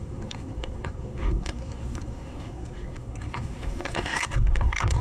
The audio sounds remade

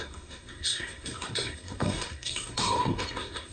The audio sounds remade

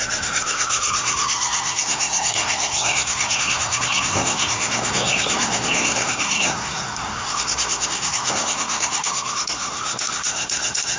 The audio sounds remade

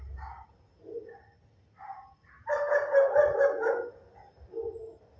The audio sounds recorded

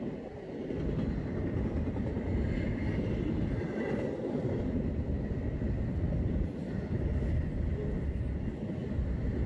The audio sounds recorded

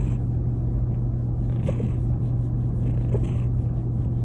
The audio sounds recorded